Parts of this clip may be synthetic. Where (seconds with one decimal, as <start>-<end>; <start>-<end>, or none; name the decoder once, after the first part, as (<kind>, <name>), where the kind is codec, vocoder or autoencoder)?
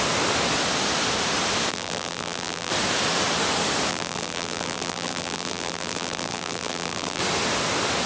1.7-2.7 (vocoder, BigVGAN v2); 3.9-7.2